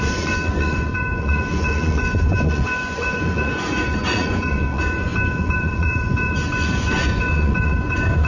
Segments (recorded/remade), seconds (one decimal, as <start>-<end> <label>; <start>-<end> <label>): 0.0-8.3 remade